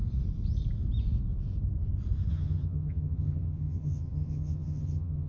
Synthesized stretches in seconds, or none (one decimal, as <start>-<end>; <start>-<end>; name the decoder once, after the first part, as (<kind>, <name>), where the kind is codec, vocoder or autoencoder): 2.3-5.3 (vocoder, HiFi-GAN)